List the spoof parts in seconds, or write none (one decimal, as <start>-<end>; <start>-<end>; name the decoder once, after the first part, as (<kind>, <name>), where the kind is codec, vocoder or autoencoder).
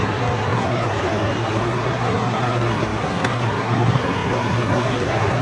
0.0-5.4 (codec, SNAC)